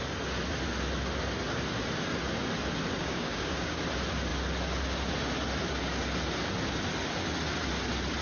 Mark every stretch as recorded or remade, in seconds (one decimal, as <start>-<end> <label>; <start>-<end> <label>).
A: 0.0-3.0 recorded; 3.0-3.8 remade; 3.8-8.2 recorded